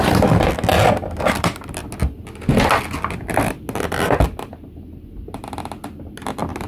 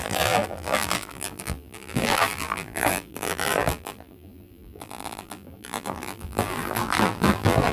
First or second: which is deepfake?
second